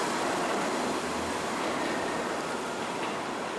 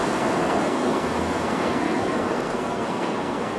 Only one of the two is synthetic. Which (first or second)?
second